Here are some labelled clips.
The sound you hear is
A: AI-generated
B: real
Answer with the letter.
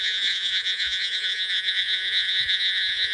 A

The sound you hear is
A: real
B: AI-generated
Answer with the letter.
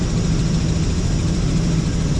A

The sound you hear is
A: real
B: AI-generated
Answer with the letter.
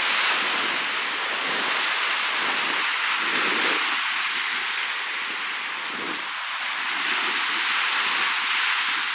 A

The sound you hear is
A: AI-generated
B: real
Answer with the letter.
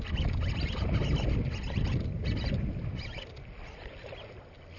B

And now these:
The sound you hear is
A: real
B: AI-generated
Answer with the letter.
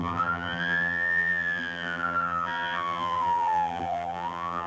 B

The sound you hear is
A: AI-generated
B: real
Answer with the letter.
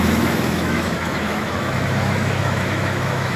A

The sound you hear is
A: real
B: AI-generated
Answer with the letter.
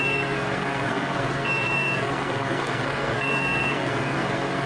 B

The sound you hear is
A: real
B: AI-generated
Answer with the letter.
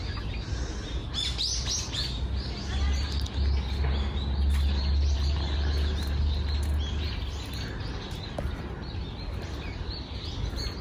A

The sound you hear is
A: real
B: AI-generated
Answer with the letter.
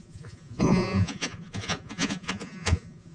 B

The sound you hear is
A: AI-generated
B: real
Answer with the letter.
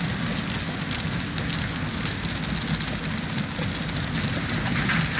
B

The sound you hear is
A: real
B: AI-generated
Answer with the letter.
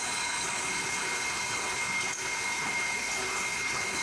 B